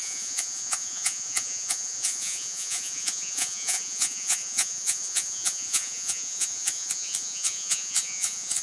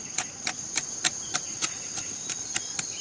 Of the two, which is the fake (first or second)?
first